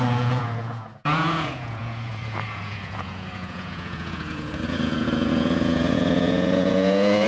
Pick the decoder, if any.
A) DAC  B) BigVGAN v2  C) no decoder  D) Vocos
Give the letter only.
D